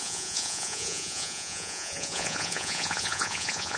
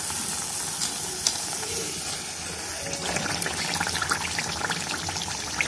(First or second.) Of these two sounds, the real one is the second